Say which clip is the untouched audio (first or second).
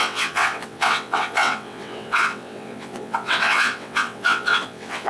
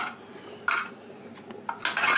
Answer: second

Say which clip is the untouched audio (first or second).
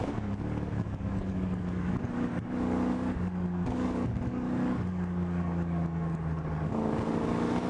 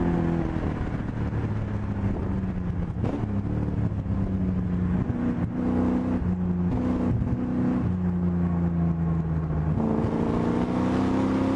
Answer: second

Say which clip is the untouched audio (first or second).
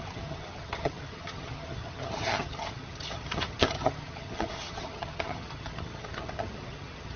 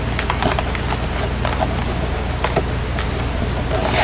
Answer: second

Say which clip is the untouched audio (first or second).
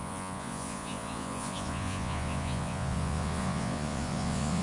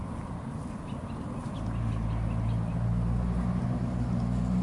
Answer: second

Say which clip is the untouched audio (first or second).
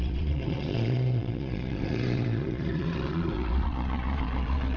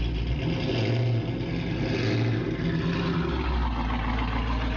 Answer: second